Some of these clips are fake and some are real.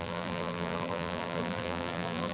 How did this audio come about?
fake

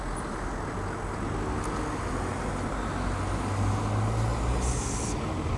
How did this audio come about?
real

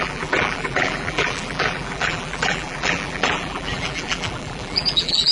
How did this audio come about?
fake